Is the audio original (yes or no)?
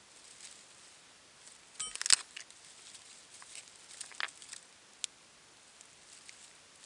yes